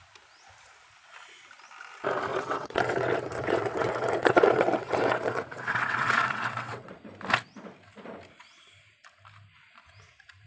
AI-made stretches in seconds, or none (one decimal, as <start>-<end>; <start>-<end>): 2.3-6.9